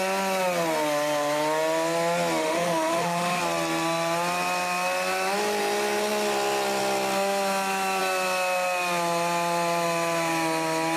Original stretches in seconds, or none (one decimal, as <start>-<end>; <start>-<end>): 0.0-2.4; 3.4-11.0